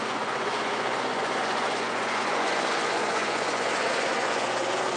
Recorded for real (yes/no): no